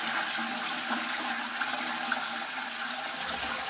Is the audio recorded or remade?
recorded